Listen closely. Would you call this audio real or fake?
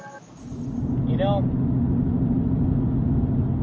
real